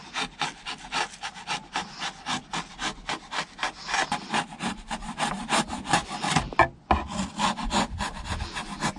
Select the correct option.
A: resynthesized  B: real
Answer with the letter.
B